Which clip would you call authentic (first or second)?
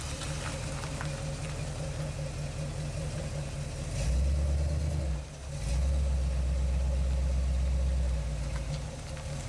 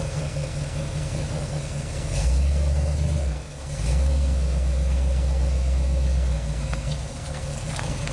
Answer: first